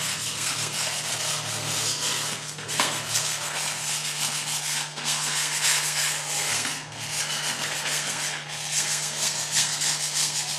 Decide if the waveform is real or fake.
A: fake